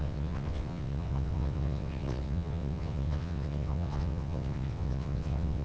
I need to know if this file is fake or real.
fake